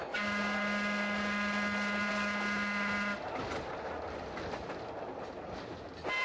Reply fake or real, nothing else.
real